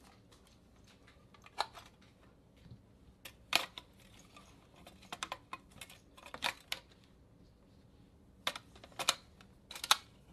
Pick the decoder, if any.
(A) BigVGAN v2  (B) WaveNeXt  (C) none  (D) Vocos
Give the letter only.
C